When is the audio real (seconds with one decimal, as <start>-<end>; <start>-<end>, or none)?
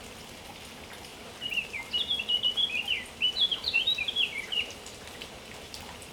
0.0-1.1; 1.9-3.5